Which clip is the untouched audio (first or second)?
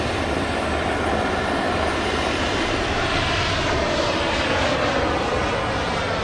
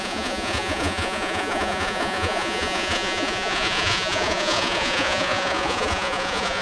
first